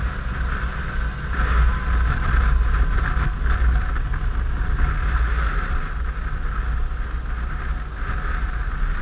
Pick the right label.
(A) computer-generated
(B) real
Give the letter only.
B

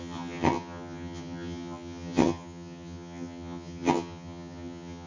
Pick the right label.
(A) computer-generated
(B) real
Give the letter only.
A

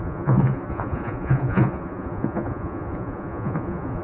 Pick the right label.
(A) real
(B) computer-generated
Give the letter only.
B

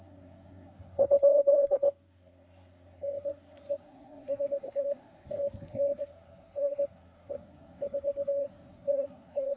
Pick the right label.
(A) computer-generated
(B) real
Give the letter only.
A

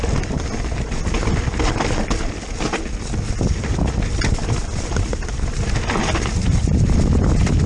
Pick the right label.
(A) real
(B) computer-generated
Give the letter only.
A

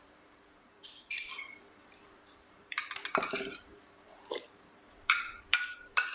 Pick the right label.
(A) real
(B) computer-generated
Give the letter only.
B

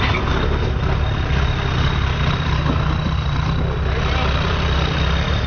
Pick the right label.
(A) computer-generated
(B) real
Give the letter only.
B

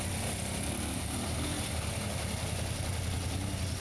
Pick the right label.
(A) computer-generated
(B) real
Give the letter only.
B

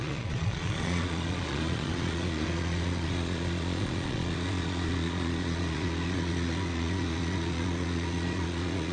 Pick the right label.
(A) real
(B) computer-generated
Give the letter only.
B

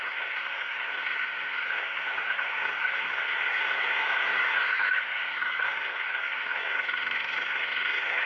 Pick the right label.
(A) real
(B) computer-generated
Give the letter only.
B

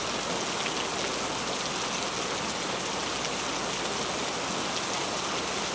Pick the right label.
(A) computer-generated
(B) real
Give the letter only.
B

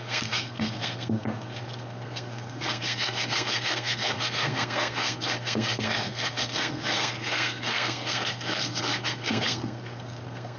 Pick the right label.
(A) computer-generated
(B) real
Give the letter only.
A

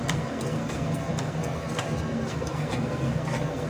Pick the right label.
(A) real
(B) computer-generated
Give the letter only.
B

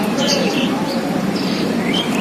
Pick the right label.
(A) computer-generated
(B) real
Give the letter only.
A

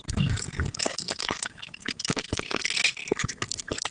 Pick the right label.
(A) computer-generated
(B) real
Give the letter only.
A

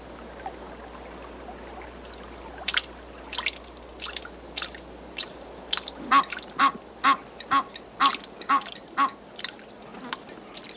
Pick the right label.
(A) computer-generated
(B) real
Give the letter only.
B